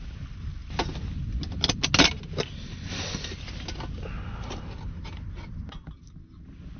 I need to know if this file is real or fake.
real